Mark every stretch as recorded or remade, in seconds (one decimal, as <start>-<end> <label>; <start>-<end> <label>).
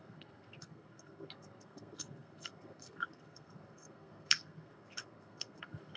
0.0-6.0 remade